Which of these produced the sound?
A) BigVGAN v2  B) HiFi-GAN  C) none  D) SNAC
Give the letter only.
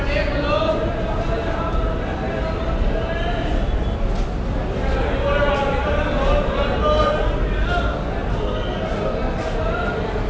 C